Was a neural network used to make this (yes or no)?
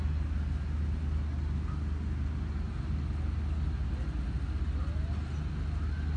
no